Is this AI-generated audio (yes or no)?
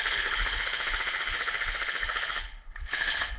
yes